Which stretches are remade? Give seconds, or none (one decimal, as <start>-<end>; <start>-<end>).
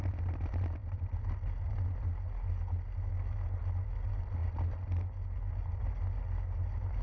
none